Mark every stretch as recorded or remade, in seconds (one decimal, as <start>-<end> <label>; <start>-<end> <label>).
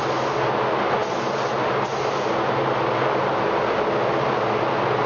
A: 0.0-5.1 recorded